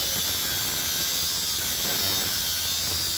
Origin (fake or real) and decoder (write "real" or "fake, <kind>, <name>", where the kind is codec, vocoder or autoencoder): real